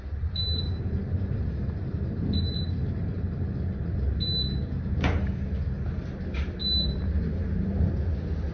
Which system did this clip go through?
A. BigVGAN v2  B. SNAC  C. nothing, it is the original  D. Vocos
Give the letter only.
C